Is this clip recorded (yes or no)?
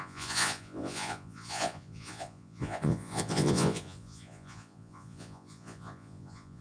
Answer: no